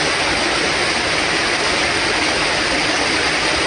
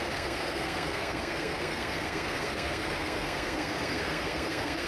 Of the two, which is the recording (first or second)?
first